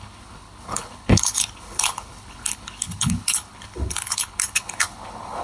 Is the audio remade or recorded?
remade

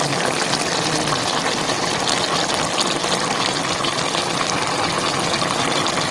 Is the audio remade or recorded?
recorded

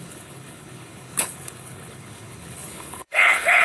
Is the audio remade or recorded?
remade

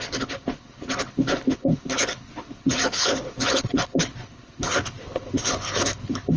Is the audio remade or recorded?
remade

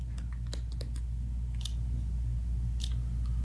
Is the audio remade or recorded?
recorded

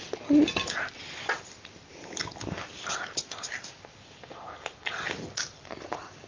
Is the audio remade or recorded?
recorded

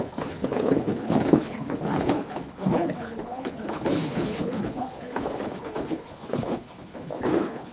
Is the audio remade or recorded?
remade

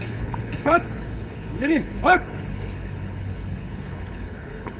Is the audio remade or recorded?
remade